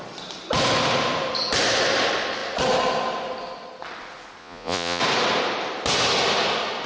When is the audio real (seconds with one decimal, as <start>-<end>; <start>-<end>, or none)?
0.0-4.4; 5.0-6.9